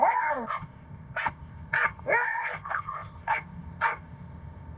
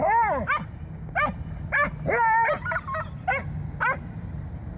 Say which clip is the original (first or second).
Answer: second